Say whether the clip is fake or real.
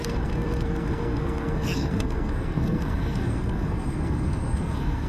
fake